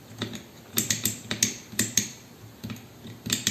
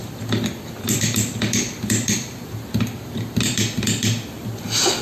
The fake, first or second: second